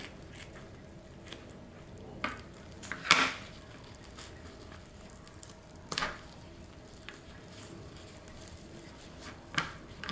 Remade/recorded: recorded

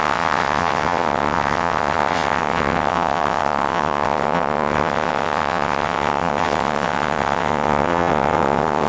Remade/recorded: remade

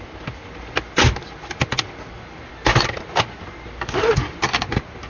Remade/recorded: recorded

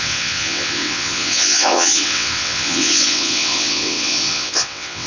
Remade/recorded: remade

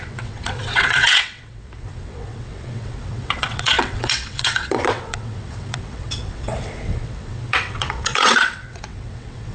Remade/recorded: remade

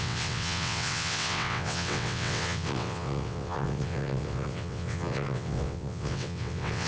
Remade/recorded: remade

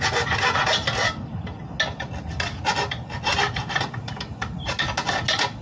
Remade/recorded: recorded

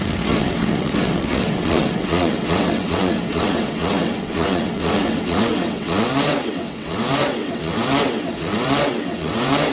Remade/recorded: remade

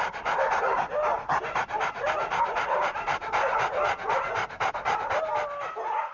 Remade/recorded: recorded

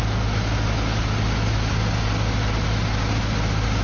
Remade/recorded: recorded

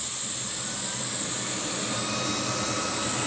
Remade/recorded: recorded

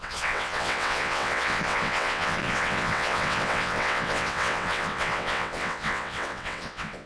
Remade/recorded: remade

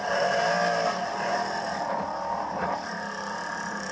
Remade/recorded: recorded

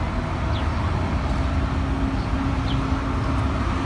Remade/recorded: recorded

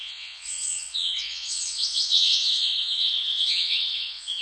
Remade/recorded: remade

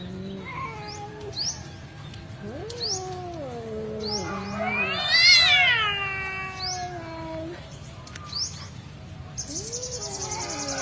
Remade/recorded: recorded